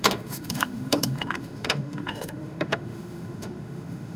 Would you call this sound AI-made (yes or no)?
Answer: yes